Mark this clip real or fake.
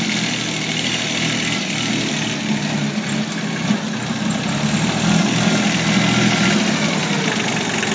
real